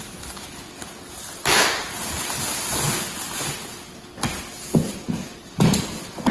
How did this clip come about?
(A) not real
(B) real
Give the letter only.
B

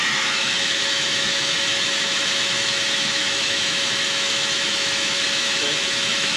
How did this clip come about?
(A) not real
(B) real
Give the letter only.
A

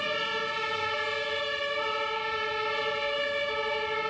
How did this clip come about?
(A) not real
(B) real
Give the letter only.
B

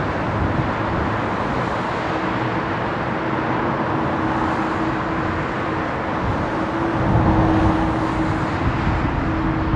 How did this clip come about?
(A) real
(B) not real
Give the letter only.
A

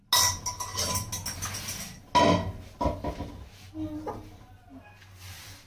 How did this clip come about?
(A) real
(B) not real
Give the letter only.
A